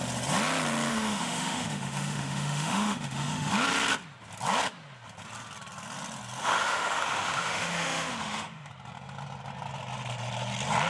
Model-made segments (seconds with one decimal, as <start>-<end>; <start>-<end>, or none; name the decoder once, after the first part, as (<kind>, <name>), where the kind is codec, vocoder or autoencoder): 0.9-3.5 (autoencoder, DAC-VAE); 6.4-8.7